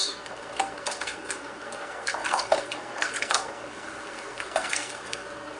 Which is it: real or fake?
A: fake